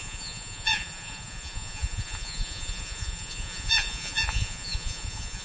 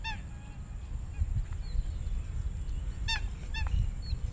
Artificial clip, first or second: first